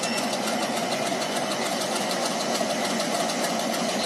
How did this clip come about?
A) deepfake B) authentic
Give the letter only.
A